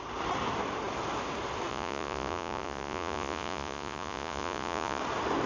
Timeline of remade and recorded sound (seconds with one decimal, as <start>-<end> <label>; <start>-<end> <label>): 0.0-1.7 recorded; 1.7-5.0 remade; 5.0-5.5 recorded